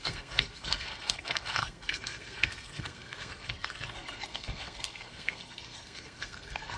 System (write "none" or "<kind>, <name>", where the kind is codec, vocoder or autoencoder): codec, SNAC